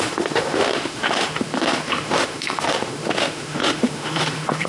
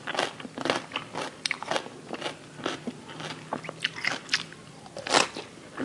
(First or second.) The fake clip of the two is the first